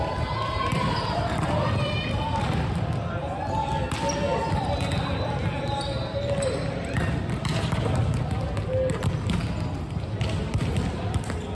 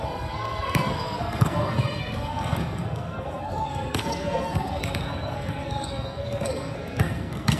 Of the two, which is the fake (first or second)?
second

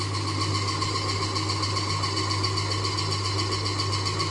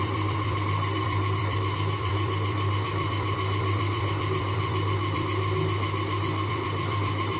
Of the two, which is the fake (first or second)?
second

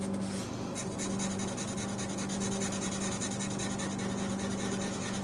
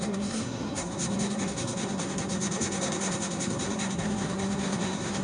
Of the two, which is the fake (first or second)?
second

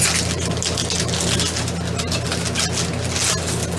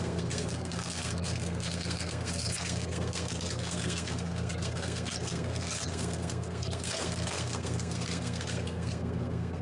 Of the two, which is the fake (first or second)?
second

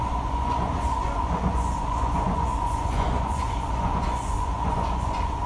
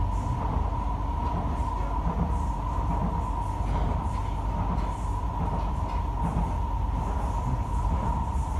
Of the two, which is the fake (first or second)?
first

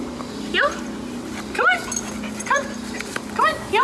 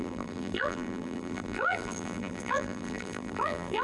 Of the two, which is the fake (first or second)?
second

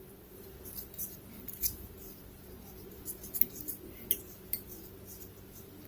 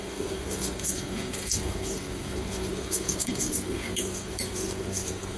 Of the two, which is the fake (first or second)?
second